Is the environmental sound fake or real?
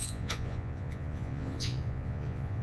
fake